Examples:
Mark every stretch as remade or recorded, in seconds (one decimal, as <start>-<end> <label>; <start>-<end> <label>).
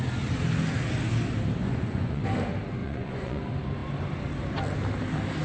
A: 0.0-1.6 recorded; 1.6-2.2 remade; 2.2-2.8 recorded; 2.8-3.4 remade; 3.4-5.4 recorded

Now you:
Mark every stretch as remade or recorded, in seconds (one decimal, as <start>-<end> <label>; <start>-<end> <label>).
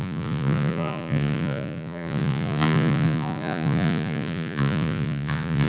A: 0.0-5.7 remade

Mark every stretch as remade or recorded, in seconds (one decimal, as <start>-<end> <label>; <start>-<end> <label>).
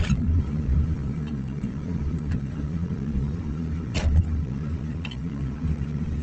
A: 0.0-6.2 remade